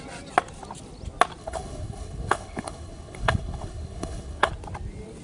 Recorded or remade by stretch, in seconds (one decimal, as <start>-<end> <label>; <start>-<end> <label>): 0.0-1.4 recorded; 1.4-4.5 remade; 4.5-5.2 recorded